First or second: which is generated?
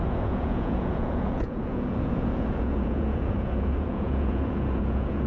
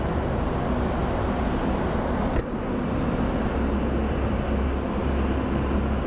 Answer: first